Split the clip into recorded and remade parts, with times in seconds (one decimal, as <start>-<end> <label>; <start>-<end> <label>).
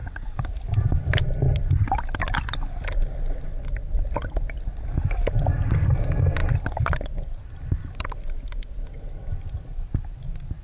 0.0-10.6 recorded